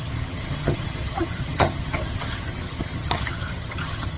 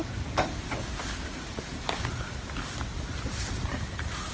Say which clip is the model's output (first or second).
first